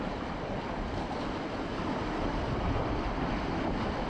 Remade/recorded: remade